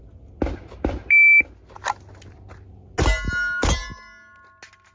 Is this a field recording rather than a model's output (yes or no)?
yes